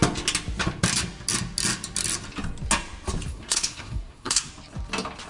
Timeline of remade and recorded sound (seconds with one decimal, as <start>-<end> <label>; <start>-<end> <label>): 0.0-3.3 recorded; 3.3-4.5 remade; 4.5-5.3 recorded